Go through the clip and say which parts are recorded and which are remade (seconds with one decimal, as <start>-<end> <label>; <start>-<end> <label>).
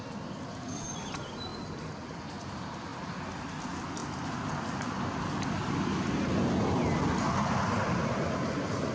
0.0-8.9 recorded